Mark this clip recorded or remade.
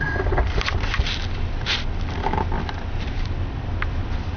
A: recorded